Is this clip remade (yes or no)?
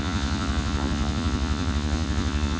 yes